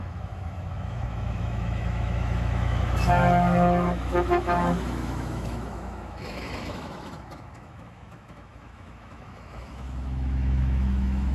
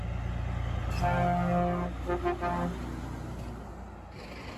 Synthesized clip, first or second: first